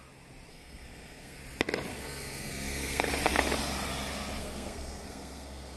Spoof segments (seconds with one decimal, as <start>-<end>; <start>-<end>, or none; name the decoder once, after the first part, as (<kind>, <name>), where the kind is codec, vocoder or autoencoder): 0.5-1.4 (codec, SNAC); 1.9-3.1; 4.4-5.8